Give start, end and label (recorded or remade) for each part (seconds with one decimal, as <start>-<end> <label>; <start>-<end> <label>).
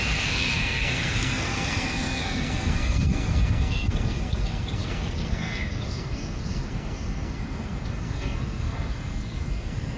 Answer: 0.0-10.0 remade